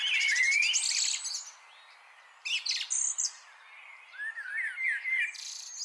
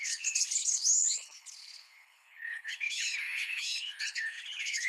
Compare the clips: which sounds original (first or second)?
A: first